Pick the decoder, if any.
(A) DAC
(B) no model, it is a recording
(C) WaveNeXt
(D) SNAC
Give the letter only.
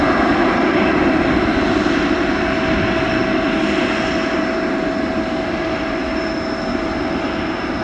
B